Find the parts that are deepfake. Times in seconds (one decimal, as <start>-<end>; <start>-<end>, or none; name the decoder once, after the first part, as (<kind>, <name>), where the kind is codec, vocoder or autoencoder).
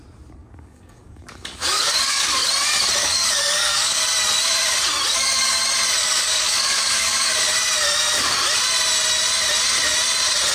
0.4-2.5 (codec, DAC); 3.0-4.0; 5.1-5.6; 6.0-7.4